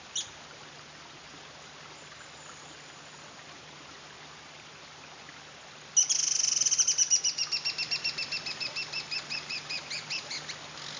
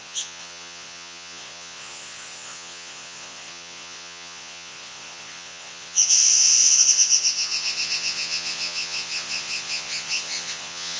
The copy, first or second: second